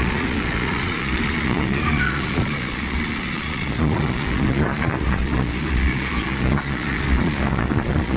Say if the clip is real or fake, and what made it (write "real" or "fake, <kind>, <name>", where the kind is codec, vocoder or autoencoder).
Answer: fake, vocoder, Vocos